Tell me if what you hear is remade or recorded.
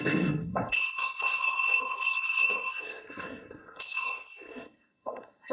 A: remade